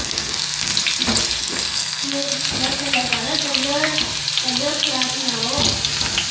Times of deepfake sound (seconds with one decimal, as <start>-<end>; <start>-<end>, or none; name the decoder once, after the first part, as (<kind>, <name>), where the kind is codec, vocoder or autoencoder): 0.0-0.7 (codec, SNAC); 1.4-2.3